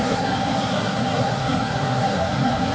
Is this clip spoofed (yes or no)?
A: yes